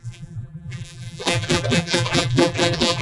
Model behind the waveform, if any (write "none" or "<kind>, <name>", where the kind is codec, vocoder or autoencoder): vocoder, BigVGAN v2